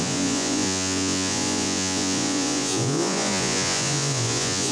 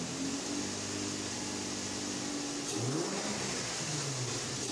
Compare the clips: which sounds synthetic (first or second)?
first